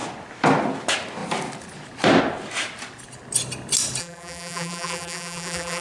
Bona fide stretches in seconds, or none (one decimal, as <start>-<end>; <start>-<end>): 0.0-4.0